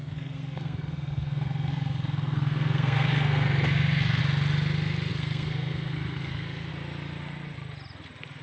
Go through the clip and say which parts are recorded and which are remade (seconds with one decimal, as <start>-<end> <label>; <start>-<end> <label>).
0.0-4.2 remade; 4.2-5.1 recorded; 5.1-6.7 remade; 6.7-8.4 recorded